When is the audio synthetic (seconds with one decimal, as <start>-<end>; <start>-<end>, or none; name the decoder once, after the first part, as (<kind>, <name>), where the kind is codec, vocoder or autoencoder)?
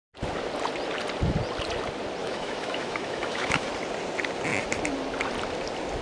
2.2-3.7 (autoencoder, DAC-VAE)